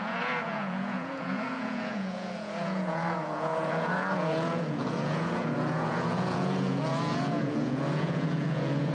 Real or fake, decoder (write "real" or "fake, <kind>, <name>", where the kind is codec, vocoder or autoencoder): fake, vocoder, Vocos